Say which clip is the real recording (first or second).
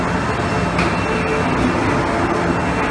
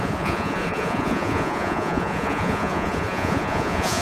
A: first